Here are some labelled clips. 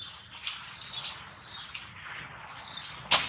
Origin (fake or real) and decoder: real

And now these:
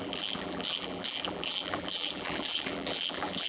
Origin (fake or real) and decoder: fake, vocoder, BigVGAN v2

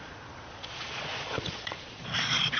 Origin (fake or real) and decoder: fake, vocoder, Vocos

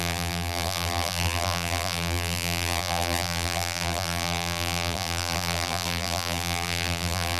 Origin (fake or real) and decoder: fake, vocoder, BigVGAN v2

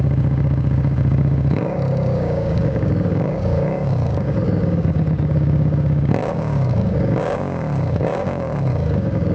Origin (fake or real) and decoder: fake, codec, DAC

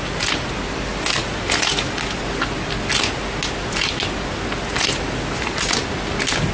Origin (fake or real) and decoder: real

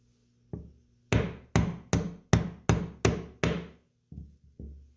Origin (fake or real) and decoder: real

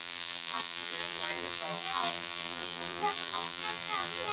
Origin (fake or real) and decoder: fake, vocoder, BigVGAN v2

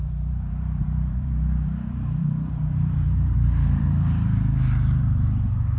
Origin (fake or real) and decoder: fake, vocoder, BigVGAN v2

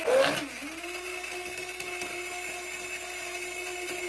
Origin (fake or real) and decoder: real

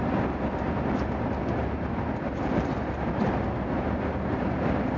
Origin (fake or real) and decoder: real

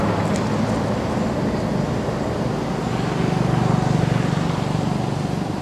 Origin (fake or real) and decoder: real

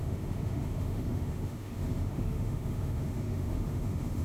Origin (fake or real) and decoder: fake, autoencoder, DAC-VAE